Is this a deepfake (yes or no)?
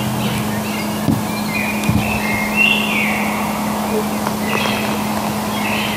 no